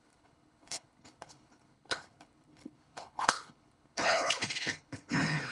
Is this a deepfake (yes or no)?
yes